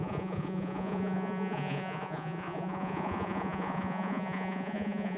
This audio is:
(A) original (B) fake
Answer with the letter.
B